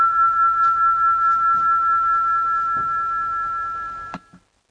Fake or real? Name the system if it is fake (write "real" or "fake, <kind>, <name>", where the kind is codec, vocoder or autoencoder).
real